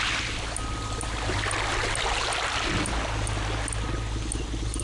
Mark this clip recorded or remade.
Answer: recorded